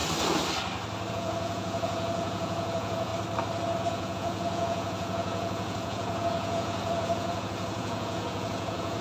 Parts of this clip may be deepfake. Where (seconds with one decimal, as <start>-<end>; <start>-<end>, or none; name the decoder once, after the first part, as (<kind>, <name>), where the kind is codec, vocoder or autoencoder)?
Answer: 1.1-3.1 (vocoder, Vocos); 3.8-9.0